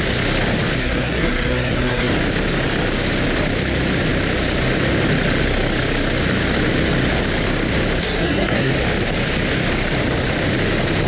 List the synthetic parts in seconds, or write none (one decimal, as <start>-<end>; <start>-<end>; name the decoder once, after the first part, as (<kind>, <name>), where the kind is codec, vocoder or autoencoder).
0.8-2.1 (codec, SNAC); 8.0-8.7